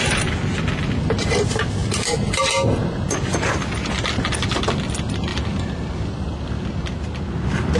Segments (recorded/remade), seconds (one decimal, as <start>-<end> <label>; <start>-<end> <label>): 0.0-1.8 recorded; 1.8-2.4 remade; 2.4-5.3 recorded; 5.3-6.3 remade; 6.3-7.8 recorded